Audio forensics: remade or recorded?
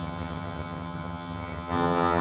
remade